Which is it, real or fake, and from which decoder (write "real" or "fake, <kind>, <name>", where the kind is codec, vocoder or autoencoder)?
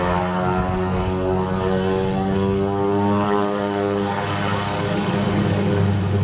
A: fake, codec, DAC